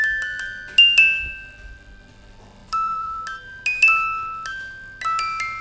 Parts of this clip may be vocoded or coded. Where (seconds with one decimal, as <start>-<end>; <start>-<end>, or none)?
2.6-3.2